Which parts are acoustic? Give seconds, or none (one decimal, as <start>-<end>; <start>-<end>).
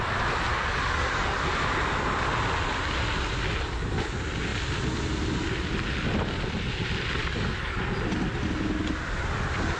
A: 0.0-0.5; 1.4-7.2; 7.8-9.8